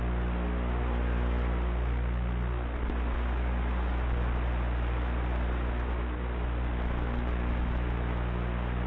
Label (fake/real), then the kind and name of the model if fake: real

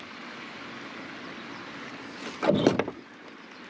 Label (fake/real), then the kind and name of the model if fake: real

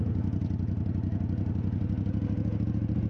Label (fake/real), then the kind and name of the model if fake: real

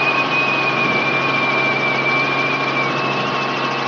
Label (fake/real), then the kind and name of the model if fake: real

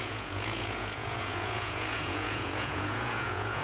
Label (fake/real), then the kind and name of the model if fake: fake, vocoder, Vocos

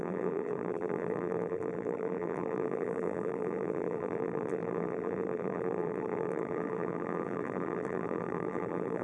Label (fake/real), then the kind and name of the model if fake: fake, vocoder, BigVGAN v2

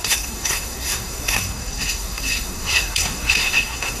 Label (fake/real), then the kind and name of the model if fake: fake, codec, SNAC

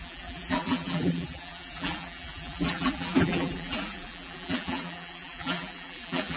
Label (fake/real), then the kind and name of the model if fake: fake, vocoder, BigVGAN v2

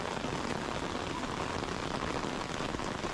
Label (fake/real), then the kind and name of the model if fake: real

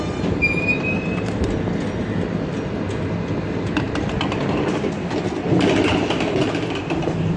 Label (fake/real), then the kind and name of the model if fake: real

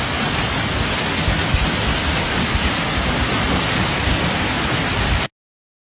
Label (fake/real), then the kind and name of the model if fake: real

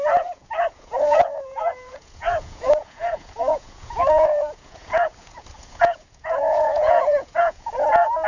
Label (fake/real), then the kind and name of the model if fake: fake, vocoder, Vocos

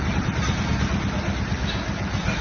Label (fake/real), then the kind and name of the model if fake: real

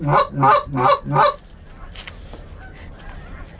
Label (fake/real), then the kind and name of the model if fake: real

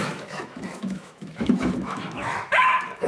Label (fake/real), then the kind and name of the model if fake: fake, autoencoder, DAC-VAE